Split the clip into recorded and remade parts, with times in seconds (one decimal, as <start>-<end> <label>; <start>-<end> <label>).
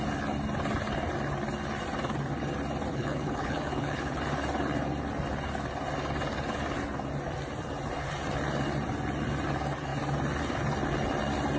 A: 0.0-2.9 recorded; 2.9-4.2 remade; 4.2-11.6 recorded